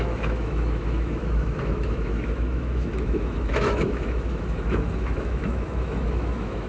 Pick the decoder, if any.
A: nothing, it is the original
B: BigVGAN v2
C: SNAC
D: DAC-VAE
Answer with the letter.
D